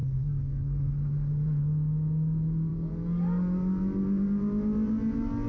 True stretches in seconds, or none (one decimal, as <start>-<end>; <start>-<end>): 0.9-5.5